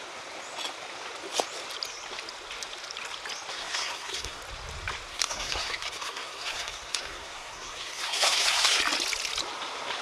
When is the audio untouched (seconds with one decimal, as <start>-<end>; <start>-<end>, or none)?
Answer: 0.0-3.5; 4.4-5.1; 8.8-10.0